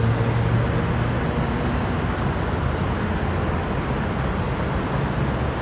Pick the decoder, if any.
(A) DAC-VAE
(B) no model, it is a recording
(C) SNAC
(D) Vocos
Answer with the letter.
B